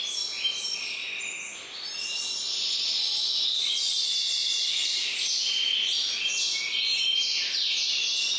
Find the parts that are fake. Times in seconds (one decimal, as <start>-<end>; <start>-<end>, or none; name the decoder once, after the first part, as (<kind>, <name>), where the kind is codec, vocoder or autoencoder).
none